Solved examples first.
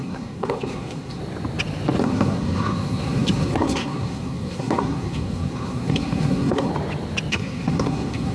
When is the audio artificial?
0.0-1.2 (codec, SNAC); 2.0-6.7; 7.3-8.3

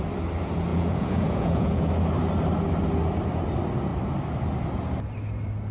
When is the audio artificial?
0.7-1.9 (vocoder, Vocos)

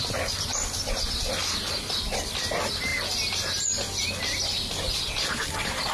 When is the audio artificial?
none

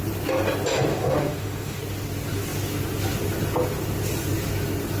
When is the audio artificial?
0.9-1.8 (autoencoder, DAC-VAE)

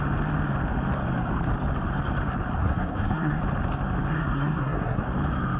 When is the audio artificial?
2.6-3.4 (codec, SNAC); 4.1-5.0

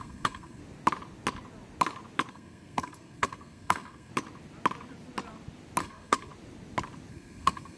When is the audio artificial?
0.0-0.6 (codec, SNAC); 2.3-4.1; 5.8-6.3; 7.1-7.8

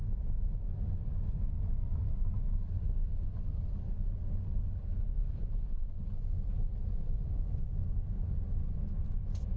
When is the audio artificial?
none

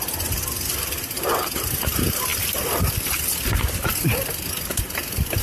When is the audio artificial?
none